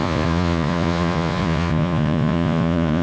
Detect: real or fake fake